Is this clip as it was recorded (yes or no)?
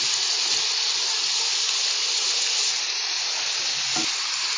yes